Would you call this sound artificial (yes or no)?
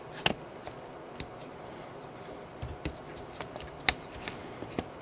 no